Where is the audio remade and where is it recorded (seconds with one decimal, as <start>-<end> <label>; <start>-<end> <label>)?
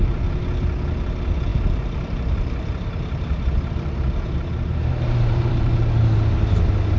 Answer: 0.0-1.5 recorded; 1.5-5.7 remade; 5.7-7.0 recorded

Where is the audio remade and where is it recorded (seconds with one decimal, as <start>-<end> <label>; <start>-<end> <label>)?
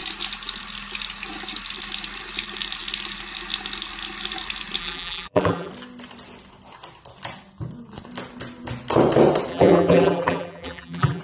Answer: 0.0-4.8 recorded; 4.8-5.7 remade; 5.7-9.5 recorded; 9.5-11.2 remade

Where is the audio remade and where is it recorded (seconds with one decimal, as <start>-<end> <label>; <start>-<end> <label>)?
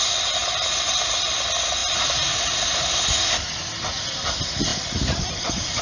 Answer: 0.0-1.8 recorded; 1.8-2.9 remade; 2.9-4.7 recorded; 4.7-5.8 remade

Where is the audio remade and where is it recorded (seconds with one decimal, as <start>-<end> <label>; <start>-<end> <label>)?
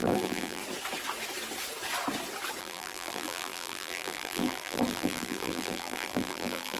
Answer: 0.0-0.6 remade; 0.6-2.6 recorded; 2.6-6.8 remade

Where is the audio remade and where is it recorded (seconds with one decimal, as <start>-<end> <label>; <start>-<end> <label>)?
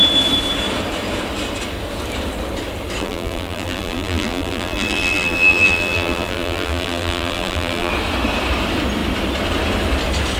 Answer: 0.0-3.0 recorded; 3.0-7.9 remade; 7.9-10.4 recorded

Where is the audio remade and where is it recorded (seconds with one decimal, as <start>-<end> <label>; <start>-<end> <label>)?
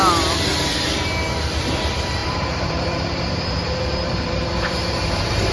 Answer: 0.0-1.6 recorded; 1.6-5.5 remade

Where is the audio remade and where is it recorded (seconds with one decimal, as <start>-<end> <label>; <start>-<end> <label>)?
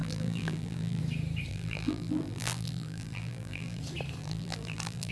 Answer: 0.0-1.0 remade; 1.0-1.5 recorded; 1.5-3.8 remade; 3.8-4.2 recorded; 4.2-5.1 remade